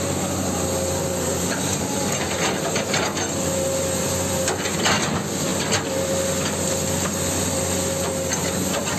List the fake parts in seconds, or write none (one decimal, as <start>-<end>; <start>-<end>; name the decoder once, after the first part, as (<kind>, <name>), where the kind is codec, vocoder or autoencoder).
1.0-2.1 (vocoder, BigVGAN v2)